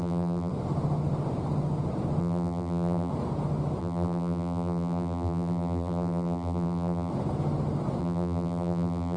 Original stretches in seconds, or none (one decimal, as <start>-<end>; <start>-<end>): 0.5-2.2; 3.1-3.8; 7.1-8.0